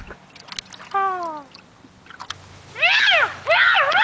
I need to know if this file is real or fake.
real